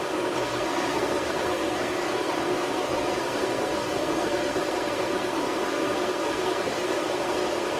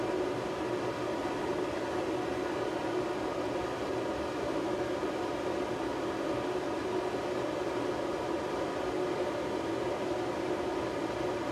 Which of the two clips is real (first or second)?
second